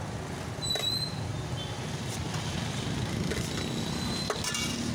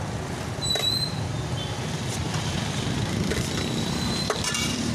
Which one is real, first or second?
first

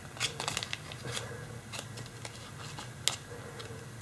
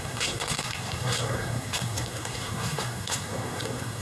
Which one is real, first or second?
first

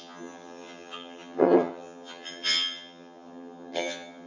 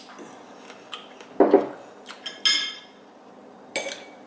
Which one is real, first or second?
second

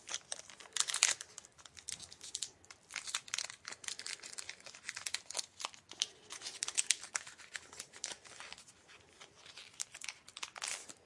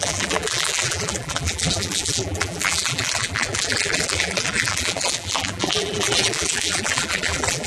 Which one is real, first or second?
first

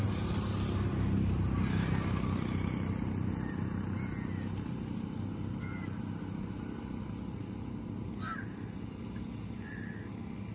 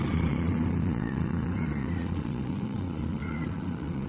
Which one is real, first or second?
first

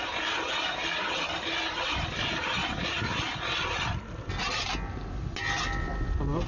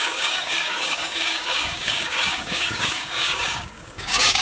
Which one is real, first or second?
first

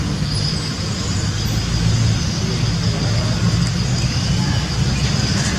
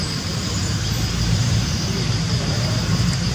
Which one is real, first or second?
first